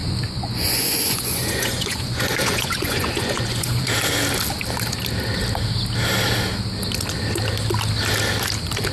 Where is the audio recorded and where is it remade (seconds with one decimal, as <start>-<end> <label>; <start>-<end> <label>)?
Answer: 0.0-3.9 remade; 3.9-8.9 recorded